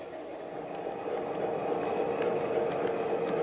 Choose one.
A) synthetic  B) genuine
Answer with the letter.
B